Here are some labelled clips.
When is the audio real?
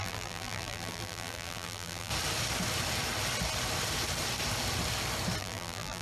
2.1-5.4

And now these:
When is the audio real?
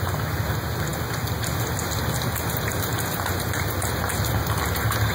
0.0-5.1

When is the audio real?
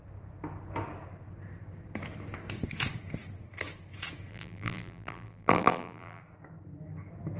0.0-4.3; 6.2-7.4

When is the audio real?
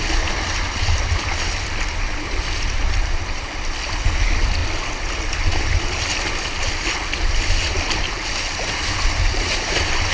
0.0-8.9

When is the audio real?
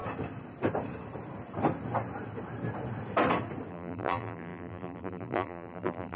0.0-3.7